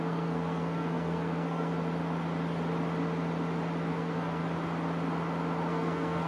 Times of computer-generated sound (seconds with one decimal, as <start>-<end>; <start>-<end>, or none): 0.0-1.7; 3.9-4.4; 5.7-6.3